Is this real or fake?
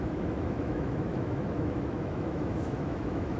fake